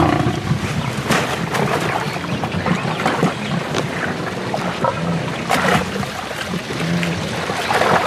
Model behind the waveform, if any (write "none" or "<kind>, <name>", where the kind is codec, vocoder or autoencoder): none